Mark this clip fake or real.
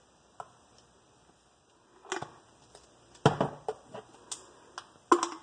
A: real